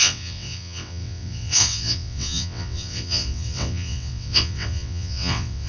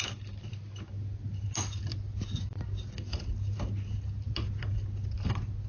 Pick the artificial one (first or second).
first